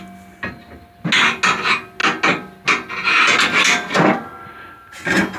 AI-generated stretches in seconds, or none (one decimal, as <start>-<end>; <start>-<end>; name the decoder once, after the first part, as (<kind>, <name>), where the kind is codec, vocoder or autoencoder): none